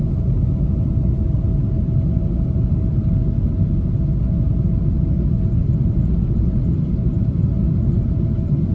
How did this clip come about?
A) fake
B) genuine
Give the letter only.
B